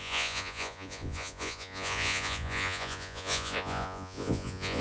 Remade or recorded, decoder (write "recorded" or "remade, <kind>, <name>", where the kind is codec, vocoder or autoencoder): remade, vocoder, Vocos